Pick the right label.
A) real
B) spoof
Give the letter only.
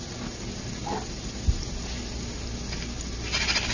A